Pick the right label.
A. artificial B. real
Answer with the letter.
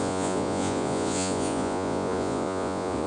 A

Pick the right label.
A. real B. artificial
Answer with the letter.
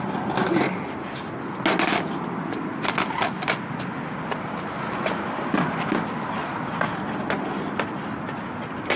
A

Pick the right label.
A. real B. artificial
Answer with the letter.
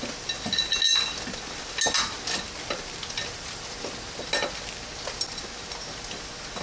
A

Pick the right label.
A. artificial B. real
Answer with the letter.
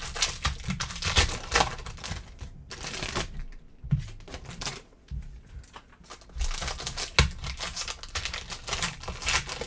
B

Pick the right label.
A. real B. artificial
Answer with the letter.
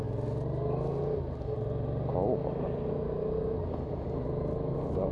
A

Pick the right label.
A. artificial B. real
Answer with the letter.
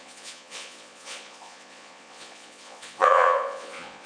A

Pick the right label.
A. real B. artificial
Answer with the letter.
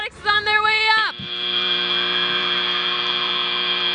B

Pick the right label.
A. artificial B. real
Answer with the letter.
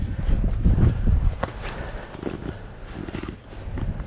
B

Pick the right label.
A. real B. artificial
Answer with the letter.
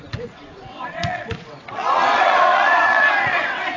B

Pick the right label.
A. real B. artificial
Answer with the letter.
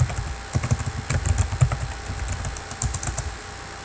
A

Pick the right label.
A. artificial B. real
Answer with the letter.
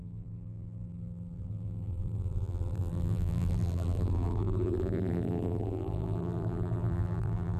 A